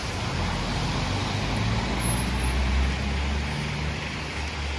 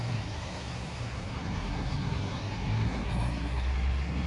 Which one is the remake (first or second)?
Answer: second